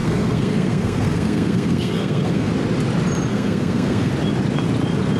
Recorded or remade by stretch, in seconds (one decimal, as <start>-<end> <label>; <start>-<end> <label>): 0.0-2.5 remade; 2.5-3.3 recorded; 3.3-4.1 remade; 4.1-5.2 recorded